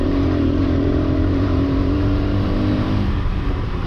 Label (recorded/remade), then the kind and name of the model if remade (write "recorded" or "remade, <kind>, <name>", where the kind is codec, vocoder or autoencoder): remade, vocoder, BigVGAN v2